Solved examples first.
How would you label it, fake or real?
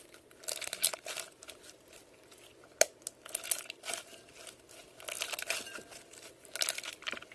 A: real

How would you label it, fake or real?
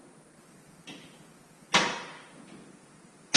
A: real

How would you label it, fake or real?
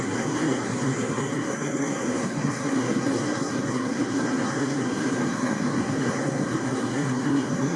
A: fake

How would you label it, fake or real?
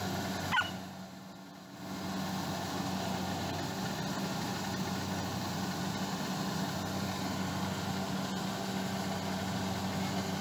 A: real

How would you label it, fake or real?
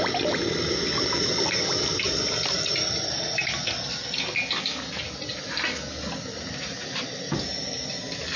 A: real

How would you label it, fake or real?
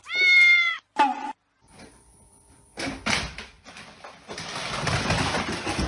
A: real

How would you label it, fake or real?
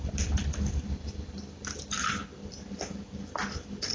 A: real